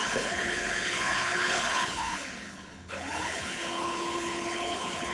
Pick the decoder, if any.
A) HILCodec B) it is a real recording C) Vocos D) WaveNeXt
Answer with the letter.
A